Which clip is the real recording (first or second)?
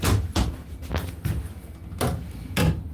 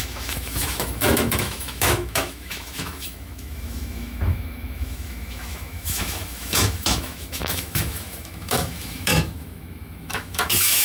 first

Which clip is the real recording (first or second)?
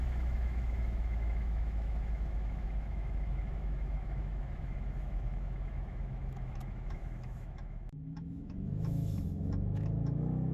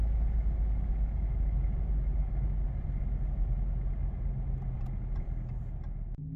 second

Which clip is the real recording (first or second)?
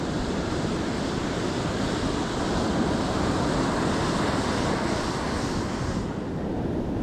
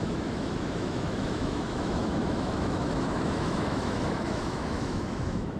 first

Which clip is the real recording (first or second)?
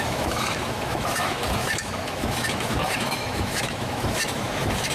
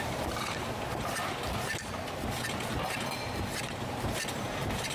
second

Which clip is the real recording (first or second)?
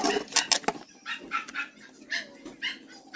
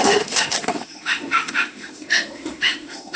first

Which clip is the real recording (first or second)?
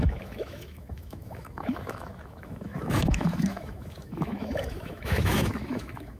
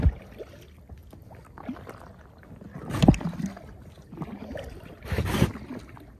second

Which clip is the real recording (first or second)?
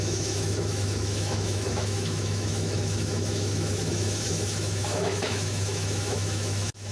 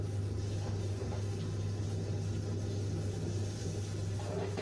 second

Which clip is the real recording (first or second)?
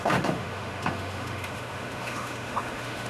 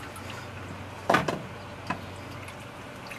second